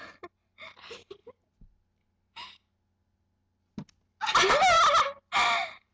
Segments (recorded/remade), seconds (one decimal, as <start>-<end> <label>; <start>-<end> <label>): 0.0-5.9 recorded